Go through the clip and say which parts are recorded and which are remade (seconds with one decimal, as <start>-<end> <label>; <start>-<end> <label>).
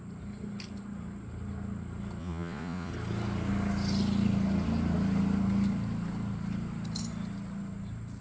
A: 0.0-2.2 recorded; 2.2-2.9 remade; 2.9-8.2 recorded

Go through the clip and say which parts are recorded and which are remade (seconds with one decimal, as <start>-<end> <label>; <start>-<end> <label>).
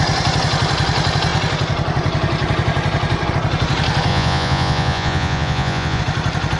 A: 0.0-4.1 recorded; 4.1-6.0 remade; 6.0-6.6 recorded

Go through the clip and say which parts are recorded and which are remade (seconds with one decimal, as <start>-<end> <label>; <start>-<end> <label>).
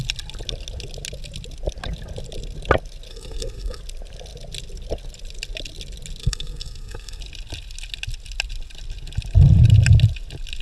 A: 0.0-3.1 recorded; 3.1-3.8 remade; 3.8-6.2 recorded; 6.2-7.2 remade; 7.2-10.6 recorded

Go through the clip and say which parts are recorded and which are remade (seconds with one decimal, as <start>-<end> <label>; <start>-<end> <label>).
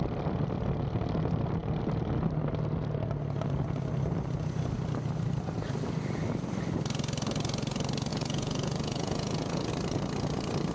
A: 0.0-8.1 recorded; 8.1-9.7 remade; 9.7-10.7 recorded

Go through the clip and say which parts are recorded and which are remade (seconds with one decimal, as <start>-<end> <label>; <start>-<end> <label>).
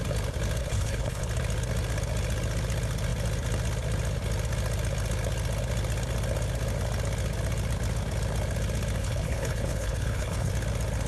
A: 0.0-0.6 recorded; 0.6-1.2 remade; 1.2-9.0 recorded; 9.0-10.5 remade; 10.5-11.1 recorded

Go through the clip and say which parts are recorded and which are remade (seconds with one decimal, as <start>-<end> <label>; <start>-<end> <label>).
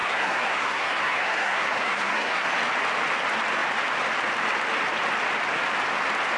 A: 0.0-2.5 remade; 2.5-6.4 recorded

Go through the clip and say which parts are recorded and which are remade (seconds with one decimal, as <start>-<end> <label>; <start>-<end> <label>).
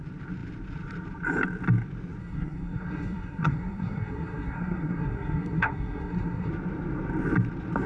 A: 0.0-2.2 recorded; 2.2-6.5 remade; 6.5-7.9 recorded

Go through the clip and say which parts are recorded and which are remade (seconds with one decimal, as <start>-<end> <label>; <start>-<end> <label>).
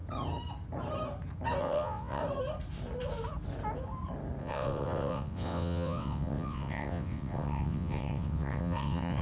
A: 0.0-1.6 recorded; 1.6-2.2 remade; 2.2-4.4 recorded; 4.4-9.2 remade